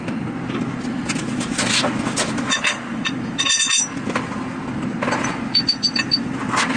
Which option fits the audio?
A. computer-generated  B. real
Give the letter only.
B